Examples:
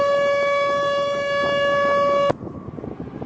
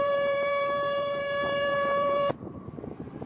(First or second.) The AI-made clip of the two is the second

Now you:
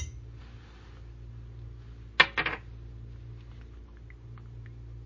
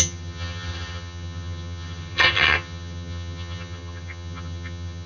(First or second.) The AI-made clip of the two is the second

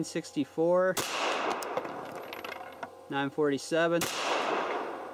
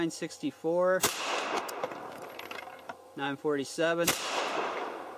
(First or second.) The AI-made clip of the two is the second